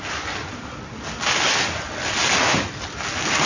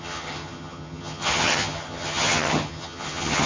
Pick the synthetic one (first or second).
second